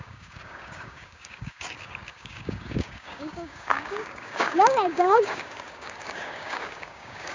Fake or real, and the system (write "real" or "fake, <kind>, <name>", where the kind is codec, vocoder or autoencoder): fake, codec, DAC